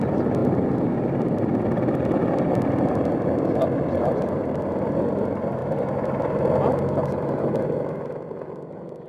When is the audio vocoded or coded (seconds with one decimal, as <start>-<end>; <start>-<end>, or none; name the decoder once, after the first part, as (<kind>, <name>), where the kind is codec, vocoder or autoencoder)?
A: none